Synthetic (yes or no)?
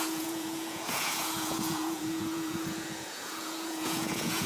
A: yes